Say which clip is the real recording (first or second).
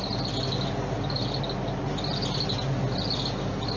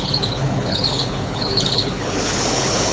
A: first